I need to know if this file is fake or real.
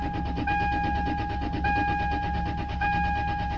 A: real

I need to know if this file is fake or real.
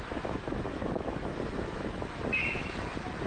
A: fake